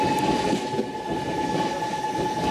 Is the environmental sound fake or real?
real